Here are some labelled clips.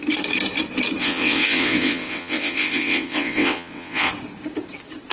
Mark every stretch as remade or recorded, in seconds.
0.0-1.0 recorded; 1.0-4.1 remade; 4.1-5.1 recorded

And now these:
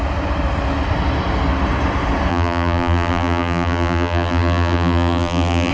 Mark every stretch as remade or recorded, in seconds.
0.0-2.3 recorded; 2.3-5.7 remade

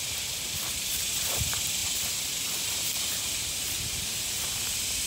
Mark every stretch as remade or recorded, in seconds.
0.0-5.1 recorded

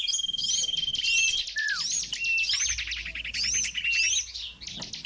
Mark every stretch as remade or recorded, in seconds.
0.0-0.9 recorded; 0.9-4.0 remade; 4.0-5.1 recorded

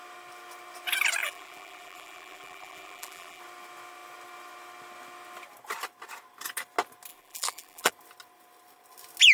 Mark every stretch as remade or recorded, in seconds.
0.0-1.2 recorded; 1.2-3.4 remade; 3.4-7.1 recorded; 7.1-7.9 remade; 7.9-9.3 recorded

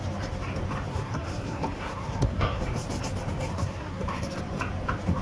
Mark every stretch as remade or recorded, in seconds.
0.0-0.9 recorded; 0.9-2.6 remade; 2.6-3.5 recorded; 3.5-4.4 remade; 4.4-5.2 recorded